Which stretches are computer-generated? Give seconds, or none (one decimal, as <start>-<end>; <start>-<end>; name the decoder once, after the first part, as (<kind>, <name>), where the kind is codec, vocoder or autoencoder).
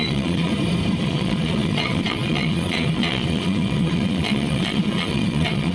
0.0-0.5 (vocoder, Vocos); 1.0-5.7